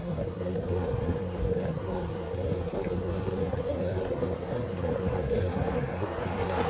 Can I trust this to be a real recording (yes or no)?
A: no